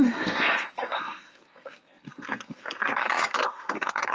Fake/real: fake